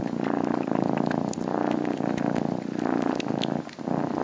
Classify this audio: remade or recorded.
recorded